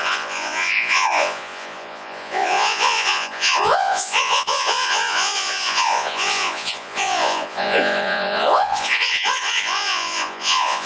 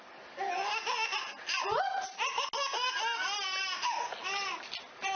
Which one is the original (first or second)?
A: second